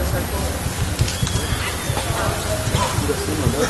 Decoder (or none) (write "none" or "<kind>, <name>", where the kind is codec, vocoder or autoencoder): none